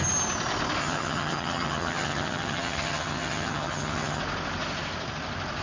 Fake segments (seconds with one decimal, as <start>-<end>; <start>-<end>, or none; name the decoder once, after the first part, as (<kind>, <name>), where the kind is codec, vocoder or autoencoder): 0.8-4.2 (vocoder, HiFi-GAN)